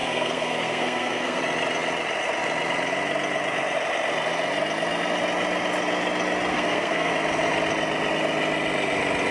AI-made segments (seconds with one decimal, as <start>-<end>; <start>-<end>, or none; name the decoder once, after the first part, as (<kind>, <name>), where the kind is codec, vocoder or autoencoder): 0.0-1.4 (codec, SNAC); 6.5-7.1

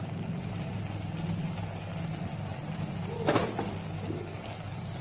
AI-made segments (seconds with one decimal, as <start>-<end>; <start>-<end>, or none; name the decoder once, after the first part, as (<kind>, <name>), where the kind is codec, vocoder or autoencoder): none

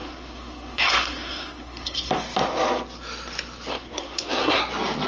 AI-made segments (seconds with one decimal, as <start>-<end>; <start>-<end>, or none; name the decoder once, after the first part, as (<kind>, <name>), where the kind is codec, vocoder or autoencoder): 0.0-2.1 (codec, SNAC); 3.7-4.6